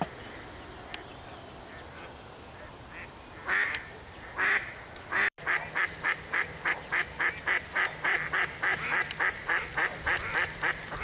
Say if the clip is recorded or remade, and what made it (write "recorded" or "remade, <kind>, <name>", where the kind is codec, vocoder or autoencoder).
recorded